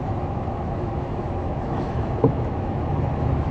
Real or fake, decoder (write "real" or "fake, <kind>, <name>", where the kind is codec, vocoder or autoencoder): fake, autoencoder, DAC-VAE